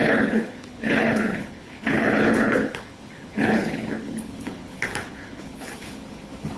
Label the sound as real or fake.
fake